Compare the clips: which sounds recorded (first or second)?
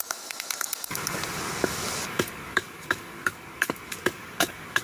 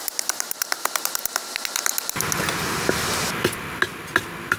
second